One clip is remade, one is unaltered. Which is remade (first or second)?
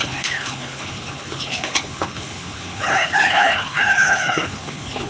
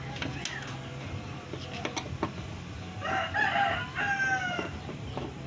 first